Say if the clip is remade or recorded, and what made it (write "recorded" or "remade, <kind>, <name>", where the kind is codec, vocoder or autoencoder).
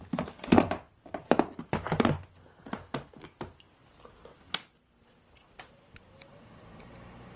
remade, vocoder, BigVGAN v2